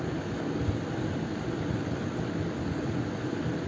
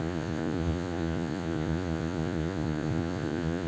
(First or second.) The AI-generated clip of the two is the second